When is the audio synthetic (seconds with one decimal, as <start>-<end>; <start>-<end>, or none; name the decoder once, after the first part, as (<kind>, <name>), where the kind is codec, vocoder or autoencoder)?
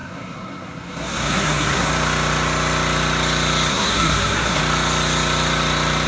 0.0-1.9 (codec, SNAC); 3.7-4.6